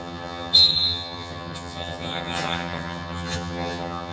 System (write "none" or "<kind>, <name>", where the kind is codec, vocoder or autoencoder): vocoder, HiFi-GAN